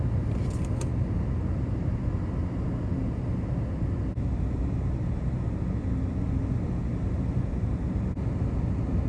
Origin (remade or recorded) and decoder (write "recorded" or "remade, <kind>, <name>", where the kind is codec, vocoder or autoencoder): recorded